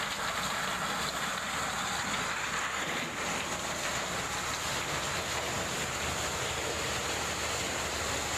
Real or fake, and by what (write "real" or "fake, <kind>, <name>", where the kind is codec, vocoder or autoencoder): real